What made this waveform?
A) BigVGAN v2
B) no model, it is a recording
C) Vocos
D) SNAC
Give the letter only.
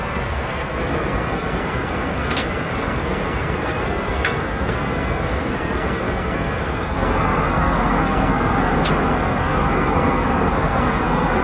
D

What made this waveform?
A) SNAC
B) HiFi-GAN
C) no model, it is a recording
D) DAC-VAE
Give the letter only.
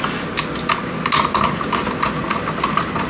C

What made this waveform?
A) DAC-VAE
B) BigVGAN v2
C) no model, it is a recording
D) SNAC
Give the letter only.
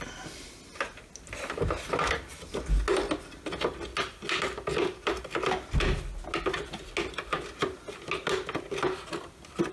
C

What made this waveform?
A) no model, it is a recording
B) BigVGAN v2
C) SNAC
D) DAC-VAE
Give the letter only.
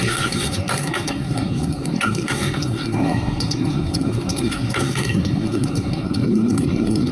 C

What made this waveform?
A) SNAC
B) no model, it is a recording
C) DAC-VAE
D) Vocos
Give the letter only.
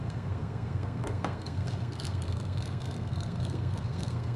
A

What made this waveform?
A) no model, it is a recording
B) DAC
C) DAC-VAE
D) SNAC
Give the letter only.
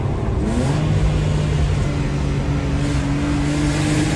A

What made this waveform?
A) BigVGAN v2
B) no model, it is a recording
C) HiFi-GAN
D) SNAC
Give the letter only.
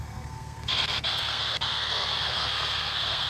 D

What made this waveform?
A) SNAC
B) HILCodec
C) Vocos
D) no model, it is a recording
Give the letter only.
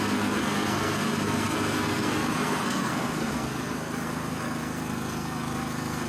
A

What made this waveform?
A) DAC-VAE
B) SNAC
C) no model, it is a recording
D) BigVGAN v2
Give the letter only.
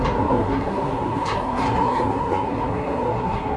B